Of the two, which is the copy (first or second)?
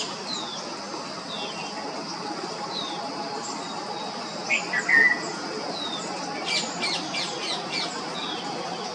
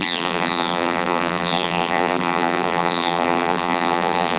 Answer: second